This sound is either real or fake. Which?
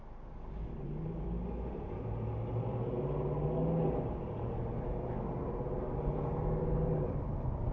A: real